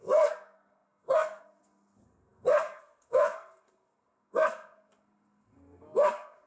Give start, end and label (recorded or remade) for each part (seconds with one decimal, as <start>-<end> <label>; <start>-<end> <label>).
0.0-6.5 remade